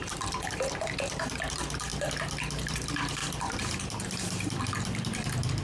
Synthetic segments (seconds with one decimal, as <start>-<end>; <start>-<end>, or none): 0.0-1.9; 2.6-5.6